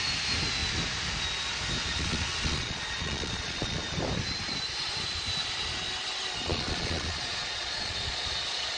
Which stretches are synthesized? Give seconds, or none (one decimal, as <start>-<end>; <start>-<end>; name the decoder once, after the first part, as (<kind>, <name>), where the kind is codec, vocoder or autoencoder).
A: 1.8-3.8 (vocoder, Vocos); 6.4-8.8